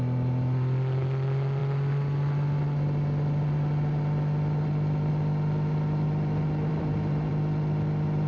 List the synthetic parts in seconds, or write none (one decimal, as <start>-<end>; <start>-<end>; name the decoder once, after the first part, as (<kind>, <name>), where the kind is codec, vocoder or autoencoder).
6.7-7.3 (vocoder, BigVGAN v2)